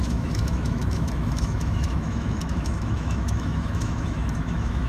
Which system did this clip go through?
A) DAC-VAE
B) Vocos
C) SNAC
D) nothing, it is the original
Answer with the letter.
A